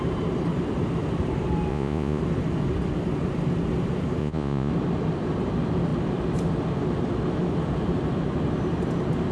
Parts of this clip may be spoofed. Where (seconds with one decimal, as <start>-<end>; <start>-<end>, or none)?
1.7-2.2; 4.2-4.7